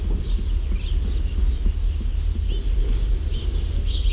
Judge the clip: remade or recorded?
recorded